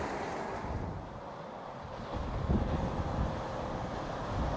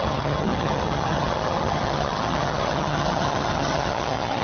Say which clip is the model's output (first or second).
second